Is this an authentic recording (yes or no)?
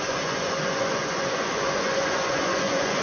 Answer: no